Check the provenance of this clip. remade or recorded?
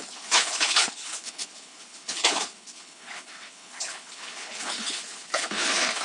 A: remade